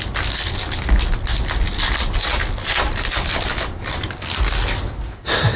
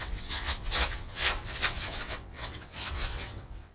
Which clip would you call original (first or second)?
first